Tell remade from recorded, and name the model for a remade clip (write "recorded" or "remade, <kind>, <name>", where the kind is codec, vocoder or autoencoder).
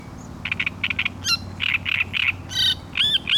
recorded